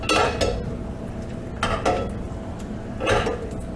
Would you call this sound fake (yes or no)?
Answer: no